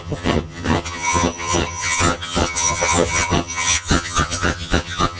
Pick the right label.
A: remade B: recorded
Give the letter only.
A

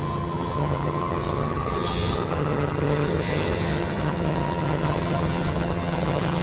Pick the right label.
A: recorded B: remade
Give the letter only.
B